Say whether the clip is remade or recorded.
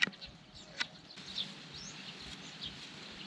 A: recorded